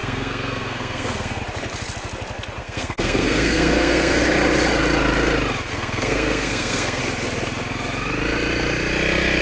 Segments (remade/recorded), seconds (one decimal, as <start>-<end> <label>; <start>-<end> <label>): 0.0-1.4 remade; 1.4-2.6 recorded; 2.6-4.2 remade; 4.2-5.7 recorded; 5.7-7.0 remade; 7.0-9.4 recorded